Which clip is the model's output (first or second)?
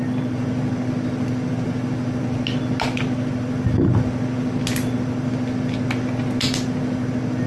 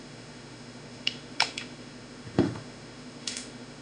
second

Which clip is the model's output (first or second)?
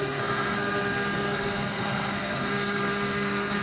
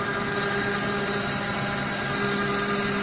first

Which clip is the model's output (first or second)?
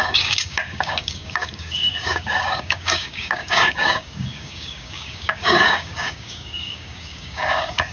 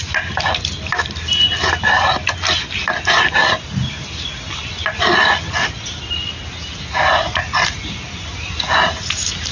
first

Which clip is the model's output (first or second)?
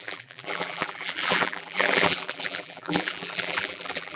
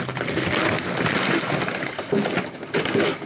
first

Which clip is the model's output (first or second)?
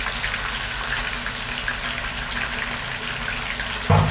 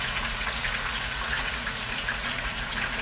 second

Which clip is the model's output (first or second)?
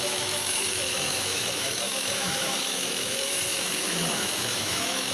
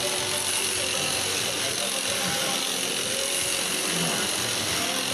first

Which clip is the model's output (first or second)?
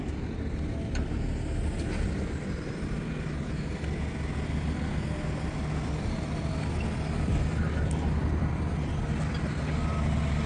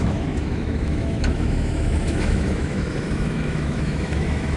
second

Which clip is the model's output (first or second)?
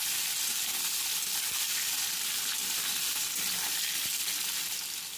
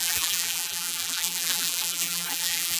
second